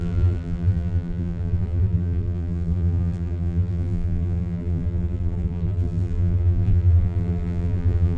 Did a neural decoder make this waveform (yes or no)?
yes